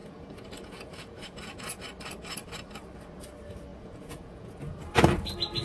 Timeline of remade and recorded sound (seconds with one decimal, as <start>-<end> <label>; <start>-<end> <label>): 0.0-1.8 remade; 1.8-3.7 recorded; 3.7-4.5 remade; 4.5-5.6 recorded